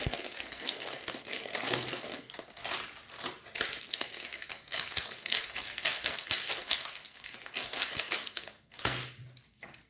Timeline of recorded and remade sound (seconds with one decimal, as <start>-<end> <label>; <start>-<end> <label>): 0.0-2.6 remade; 2.6-3.8 recorded; 3.8-9.0 remade; 9.0-9.5 recorded; 9.5-9.9 remade